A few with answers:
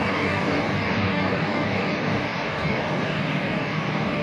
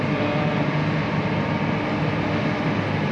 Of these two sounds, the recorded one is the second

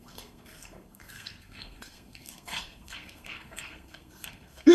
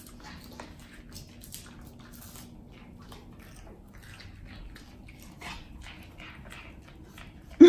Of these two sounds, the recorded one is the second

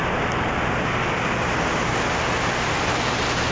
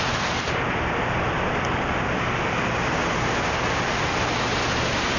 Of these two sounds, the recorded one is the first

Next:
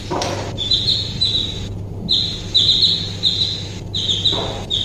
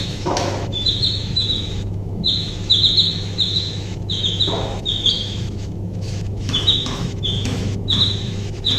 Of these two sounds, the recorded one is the first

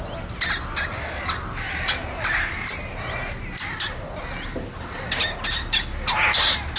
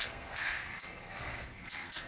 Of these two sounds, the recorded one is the first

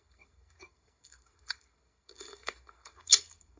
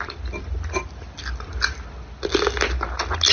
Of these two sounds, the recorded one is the second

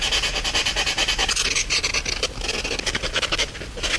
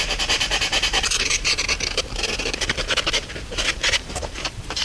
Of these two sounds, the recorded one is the first